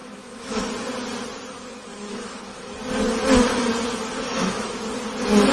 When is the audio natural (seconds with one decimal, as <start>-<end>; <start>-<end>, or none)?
0.6-1.9; 2.7-4.3; 4.8-5.5